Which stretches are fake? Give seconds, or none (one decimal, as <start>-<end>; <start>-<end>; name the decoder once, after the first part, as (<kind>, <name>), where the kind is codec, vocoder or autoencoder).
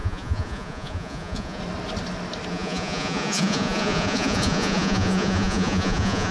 0.0-1.6 (vocoder, Vocos); 2.5-6.3